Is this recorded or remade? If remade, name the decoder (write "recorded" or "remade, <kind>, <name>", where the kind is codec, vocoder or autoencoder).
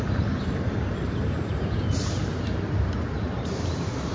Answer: remade, vocoder, BigVGAN v2